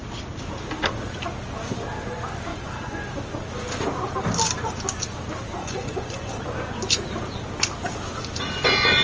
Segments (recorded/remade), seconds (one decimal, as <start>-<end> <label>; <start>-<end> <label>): 0.0-2.5 recorded; 2.5-3.1 remade; 3.1-5.6 recorded; 5.6-6.4 remade; 6.4-9.0 recorded